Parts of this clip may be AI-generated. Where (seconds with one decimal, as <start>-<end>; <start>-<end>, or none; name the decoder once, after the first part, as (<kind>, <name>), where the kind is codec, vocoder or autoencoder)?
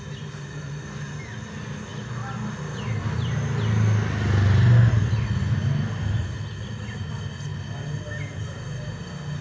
none